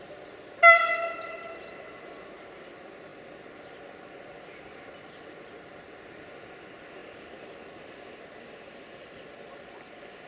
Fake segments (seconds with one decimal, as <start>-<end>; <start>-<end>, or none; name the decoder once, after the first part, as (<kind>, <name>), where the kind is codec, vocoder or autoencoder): 7.0-9.5 (vocoder, BigVGAN v2)

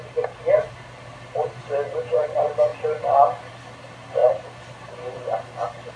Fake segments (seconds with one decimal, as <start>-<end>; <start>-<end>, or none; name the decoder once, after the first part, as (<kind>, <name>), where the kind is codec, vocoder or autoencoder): 2.7-3.5 (vocoder, BigVGAN v2); 4.2-5.0

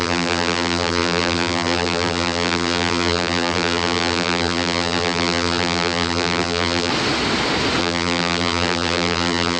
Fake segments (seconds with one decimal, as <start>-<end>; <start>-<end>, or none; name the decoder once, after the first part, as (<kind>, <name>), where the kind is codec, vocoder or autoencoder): 0.0-6.9 (vocoder, BigVGAN v2); 7.8-9.6

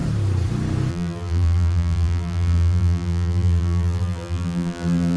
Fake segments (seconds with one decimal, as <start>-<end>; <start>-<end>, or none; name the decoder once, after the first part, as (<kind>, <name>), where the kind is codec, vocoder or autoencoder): 0.9-5.2 (vocoder, BigVGAN v2)